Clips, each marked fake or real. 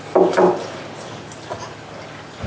real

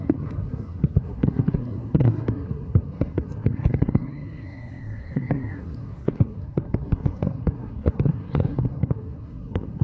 fake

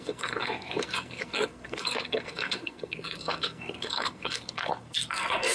fake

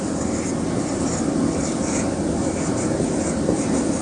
real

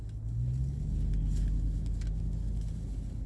real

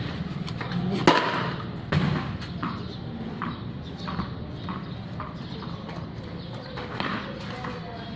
real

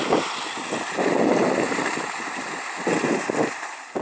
real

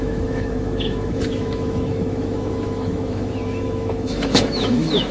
fake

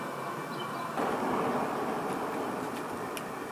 real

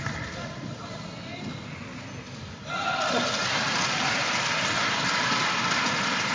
real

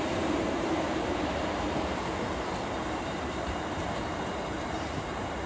fake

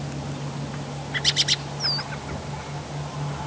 real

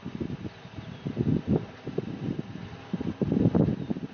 real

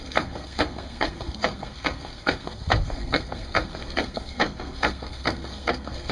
fake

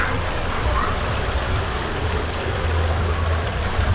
real